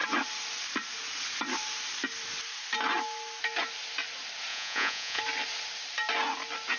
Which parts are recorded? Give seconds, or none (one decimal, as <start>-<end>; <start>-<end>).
0.0-4.5; 5.2-6.8